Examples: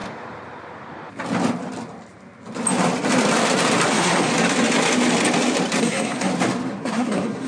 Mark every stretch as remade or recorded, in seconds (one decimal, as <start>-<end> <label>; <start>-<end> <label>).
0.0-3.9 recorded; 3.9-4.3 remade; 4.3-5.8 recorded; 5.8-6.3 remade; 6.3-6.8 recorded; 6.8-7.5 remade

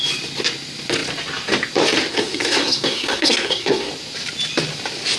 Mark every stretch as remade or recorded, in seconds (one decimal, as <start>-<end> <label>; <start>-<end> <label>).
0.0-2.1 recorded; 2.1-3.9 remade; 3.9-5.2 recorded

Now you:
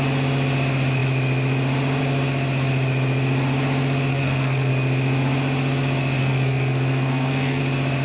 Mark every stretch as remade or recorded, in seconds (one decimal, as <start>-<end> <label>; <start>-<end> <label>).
0.0-4.1 recorded; 4.1-4.7 remade; 4.7-6.2 recorded; 6.2-7.6 remade; 7.6-8.0 recorded